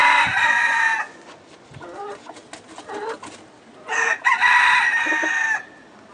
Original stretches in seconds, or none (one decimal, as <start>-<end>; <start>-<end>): 1.4-6.1

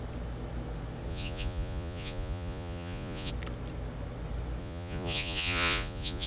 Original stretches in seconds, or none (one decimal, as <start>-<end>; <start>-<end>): 0.0-1.1; 3.3-4.6